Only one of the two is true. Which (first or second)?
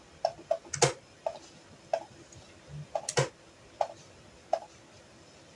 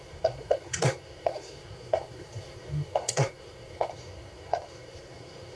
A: first